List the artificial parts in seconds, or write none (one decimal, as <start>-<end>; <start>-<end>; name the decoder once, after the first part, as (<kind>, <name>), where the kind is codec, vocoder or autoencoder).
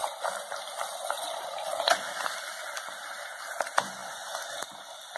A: none